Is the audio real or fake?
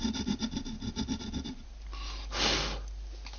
real